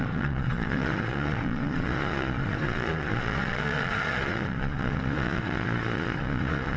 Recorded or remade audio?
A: remade